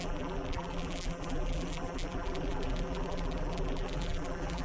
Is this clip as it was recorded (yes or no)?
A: no